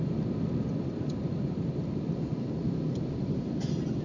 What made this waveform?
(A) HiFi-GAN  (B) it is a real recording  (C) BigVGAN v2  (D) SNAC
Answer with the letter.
C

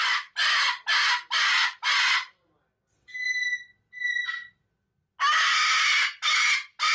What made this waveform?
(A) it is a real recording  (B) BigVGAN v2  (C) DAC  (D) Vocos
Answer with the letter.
A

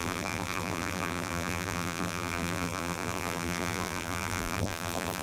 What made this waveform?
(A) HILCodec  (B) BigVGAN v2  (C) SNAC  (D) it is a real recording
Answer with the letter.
B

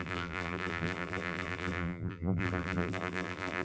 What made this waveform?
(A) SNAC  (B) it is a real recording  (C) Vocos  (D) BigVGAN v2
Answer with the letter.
D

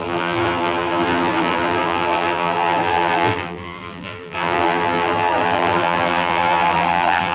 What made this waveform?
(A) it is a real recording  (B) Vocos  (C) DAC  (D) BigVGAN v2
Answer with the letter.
D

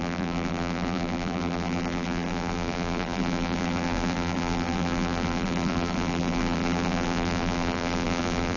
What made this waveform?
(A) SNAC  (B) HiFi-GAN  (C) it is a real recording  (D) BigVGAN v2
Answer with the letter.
D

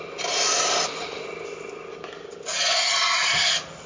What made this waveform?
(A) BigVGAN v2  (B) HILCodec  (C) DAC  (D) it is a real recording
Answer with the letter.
D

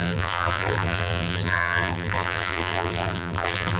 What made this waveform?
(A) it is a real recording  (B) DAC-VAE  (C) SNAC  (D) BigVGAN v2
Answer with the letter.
D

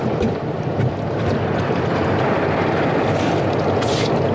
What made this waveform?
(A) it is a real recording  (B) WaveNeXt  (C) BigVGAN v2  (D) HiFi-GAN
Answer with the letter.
C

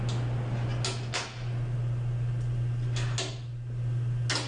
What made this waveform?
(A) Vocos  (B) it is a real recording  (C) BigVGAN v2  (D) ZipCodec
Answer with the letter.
B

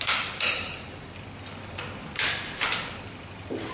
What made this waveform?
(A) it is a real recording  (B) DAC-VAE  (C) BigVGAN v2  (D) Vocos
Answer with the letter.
A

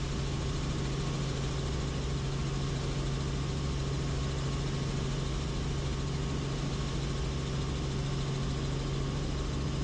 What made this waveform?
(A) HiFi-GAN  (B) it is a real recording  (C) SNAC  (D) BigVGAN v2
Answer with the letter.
B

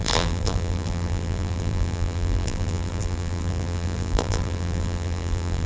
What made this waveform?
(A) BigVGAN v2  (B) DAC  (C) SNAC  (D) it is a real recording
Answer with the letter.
A